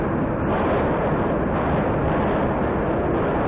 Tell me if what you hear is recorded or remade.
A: recorded